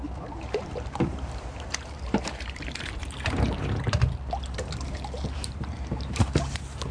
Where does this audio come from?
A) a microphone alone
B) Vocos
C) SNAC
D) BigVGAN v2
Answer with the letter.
D